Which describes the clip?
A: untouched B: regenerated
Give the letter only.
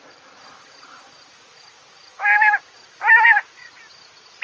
A